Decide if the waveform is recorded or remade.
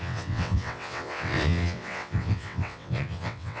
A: remade